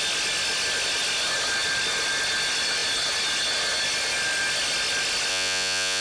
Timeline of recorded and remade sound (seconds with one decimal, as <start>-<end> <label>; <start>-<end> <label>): 0.0-5.3 recorded; 5.3-6.0 remade